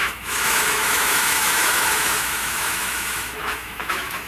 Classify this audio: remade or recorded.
remade